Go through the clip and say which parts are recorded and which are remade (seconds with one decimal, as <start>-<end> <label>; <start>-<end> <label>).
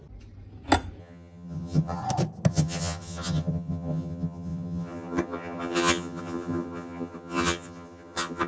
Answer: 0.0-1.0 recorded; 1.0-2.0 remade; 2.0-2.5 recorded; 2.5-8.5 remade